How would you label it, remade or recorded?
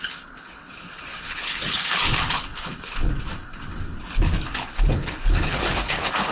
remade